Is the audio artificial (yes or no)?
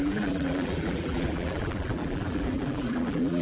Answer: yes